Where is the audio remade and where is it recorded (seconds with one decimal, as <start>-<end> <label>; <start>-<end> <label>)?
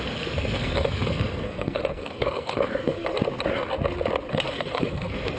0.0-3.1 remade; 3.1-4.3 recorded; 4.3-5.4 remade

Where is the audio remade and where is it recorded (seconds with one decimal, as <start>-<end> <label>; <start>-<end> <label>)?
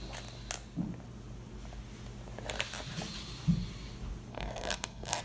0.0-4.3 recorded; 4.3-5.2 remade